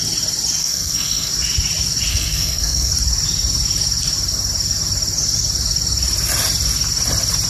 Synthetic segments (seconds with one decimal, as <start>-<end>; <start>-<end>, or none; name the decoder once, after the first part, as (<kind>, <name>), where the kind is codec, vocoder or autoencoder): 0.6-1.3 (codec, SNAC); 2.1-2.9